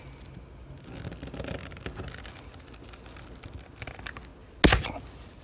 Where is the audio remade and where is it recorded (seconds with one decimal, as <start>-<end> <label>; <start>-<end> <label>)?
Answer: 0.0-5.4 recorded